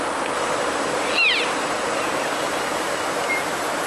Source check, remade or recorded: recorded